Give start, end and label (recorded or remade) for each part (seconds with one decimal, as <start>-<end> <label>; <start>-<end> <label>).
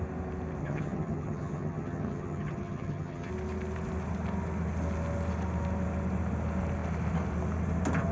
0.0-0.6 recorded; 0.6-3.3 remade; 3.3-8.1 recorded